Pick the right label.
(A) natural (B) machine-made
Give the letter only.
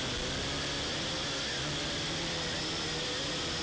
A